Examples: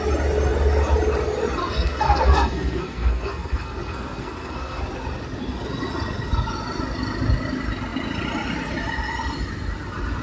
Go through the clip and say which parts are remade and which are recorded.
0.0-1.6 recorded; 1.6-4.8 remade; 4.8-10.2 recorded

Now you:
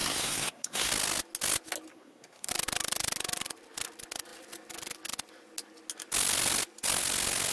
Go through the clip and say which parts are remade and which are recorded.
0.0-0.9 remade; 0.9-1.9 recorded; 1.9-2.5 remade; 2.5-7.5 recorded

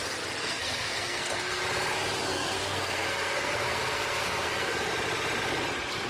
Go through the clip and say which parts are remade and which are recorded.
0.0-0.4 recorded; 0.4-1.6 remade; 1.6-2.2 recorded; 2.2-4.9 remade; 4.9-6.1 recorded

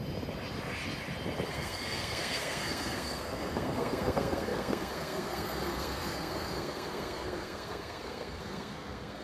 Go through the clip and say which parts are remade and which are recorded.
0.0-1.5 recorded; 1.5-9.2 remade

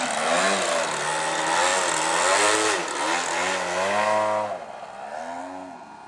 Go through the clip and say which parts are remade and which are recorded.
0.0-6.1 recorded

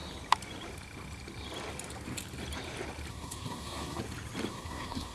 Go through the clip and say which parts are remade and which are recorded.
0.0-3.1 recorded; 3.1-4.0 remade; 4.0-4.5 recorded; 4.5-5.1 remade

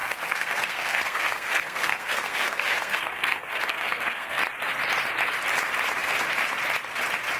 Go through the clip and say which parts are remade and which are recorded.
0.0-4.4 remade; 4.4-7.4 recorded

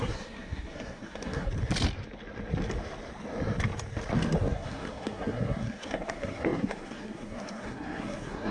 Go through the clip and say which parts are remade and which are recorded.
0.0-1.5 remade; 1.5-4.4 recorded; 4.4-8.5 remade